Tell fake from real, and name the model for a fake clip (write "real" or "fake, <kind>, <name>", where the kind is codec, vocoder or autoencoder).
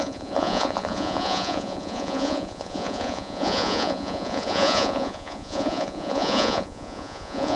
fake, vocoder, Vocos